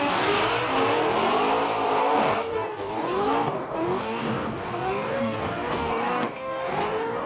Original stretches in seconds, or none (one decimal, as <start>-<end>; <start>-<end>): 0.4-2.0